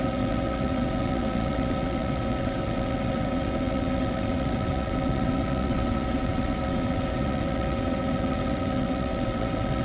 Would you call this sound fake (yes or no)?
yes